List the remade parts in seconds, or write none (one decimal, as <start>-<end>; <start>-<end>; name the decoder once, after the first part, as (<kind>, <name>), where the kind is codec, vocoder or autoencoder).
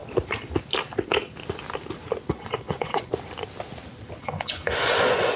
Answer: 2.3-3.1 (vocoder, Vocos); 4.2-5.4